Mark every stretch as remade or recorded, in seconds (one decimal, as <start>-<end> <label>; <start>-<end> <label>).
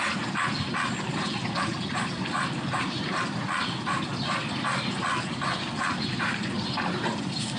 0.0-7.6 recorded